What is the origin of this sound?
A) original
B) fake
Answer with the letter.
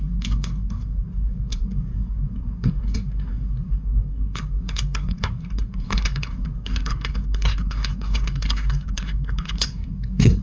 B